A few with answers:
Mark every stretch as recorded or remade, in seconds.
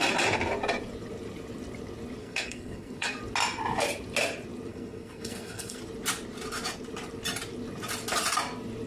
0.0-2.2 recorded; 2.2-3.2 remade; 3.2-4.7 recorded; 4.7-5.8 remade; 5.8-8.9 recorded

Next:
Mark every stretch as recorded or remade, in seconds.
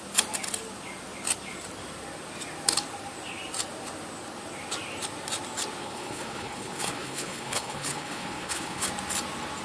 0.0-5.8 recorded; 5.8-8.9 remade; 8.9-9.6 recorded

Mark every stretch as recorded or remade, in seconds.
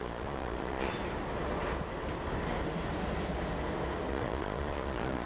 0.0-0.9 remade; 0.9-4.1 recorded; 4.1-5.3 remade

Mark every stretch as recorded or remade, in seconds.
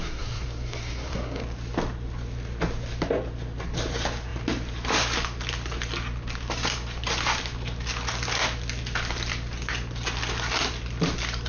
0.0-1.4 remade; 1.4-11.5 recorded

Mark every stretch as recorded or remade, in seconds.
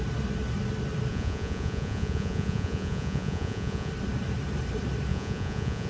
0.0-1.1 recorded; 1.1-3.9 remade; 3.9-5.1 recorded; 5.1-5.9 remade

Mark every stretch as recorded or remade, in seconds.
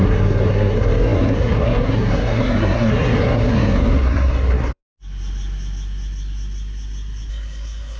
0.0-4.8 remade; 4.8-7.3 recorded; 7.3-8.0 remade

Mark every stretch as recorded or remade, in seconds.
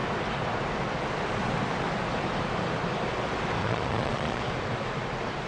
0.0-3.6 recorded; 3.6-4.4 remade; 4.4-5.5 recorded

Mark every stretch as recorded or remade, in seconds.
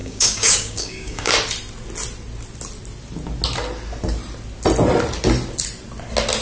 0.0-1.3 remade; 1.3-6.4 recorded